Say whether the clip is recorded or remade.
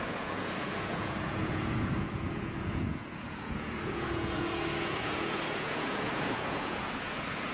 remade